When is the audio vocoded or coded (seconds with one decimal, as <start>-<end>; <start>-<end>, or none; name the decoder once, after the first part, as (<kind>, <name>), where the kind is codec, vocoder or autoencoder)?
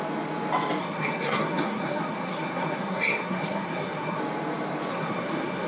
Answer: 0.8-4.2 (codec, SNAC); 4.9-5.7